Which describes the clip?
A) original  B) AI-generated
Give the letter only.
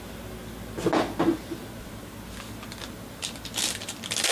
A